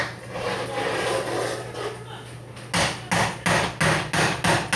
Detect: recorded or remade recorded